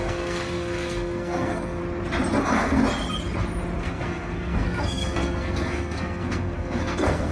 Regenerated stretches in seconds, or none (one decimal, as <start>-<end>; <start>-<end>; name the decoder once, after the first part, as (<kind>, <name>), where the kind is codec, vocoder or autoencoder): 0.0-1.8 (codec, SNAC); 2.4-2.8; 3.8-7.3